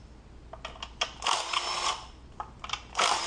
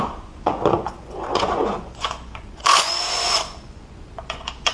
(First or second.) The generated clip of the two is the second